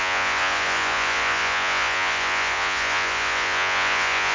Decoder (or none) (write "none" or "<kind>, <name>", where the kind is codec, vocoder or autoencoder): vocoder, Vocos